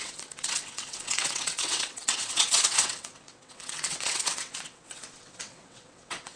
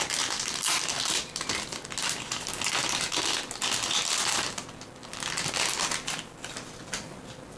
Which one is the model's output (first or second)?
first